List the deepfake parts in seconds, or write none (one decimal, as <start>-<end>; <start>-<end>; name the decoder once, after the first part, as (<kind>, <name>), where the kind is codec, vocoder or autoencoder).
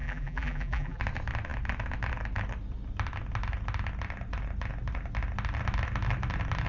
0.0-1.0 (vocoder, BigVGAN v2)